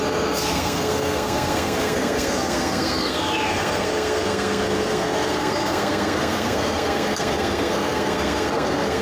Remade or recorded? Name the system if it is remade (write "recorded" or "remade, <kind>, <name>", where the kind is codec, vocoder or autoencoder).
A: remade, codec, SNAC